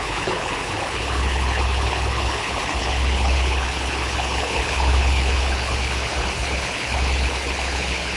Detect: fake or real fake